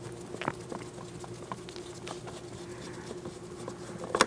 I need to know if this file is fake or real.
real